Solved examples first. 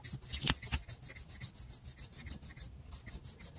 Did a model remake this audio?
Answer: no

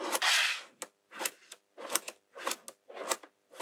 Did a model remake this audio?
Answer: no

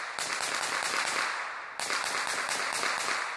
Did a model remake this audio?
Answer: no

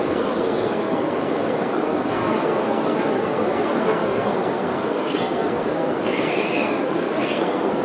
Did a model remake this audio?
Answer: yes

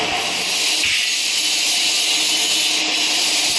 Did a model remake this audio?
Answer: no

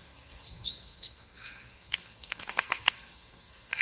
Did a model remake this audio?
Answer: yes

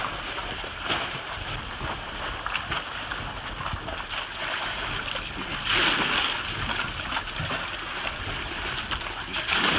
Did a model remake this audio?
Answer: no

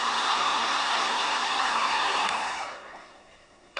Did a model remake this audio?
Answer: yes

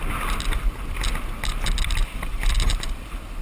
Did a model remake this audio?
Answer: no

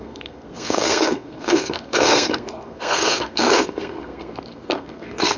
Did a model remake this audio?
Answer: yes